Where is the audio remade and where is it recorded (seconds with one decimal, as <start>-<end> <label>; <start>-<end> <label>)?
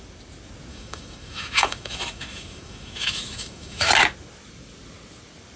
0.0-0.7 recorded; 0.7-3.9 remade; 3.9-5.6 recorded